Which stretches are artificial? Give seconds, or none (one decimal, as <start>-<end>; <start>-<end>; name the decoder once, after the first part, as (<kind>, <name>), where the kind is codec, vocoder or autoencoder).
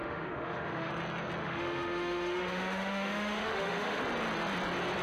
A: 0.0-0.9 (autoencoder, DAC-VAE); 1.4-4.0